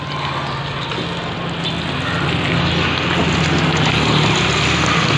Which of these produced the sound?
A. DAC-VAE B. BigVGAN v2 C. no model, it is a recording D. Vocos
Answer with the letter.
C